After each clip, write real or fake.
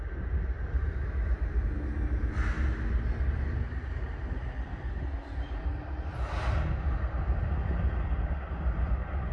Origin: real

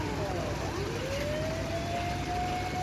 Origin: real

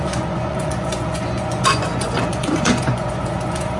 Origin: fake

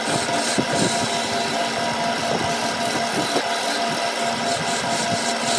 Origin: real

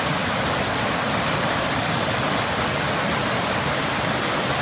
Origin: real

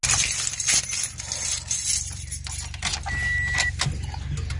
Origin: real